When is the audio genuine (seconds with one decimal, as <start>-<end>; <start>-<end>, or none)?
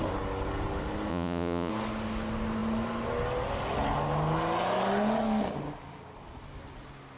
0.0-1.1; 1.7-7.2